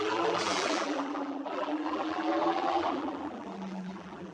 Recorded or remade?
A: remade